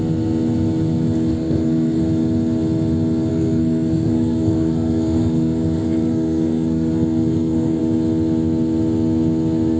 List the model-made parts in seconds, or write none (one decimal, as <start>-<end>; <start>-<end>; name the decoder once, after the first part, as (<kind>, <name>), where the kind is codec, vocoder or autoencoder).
1.3-2.0 (codec, SNAC); 3.3-7.8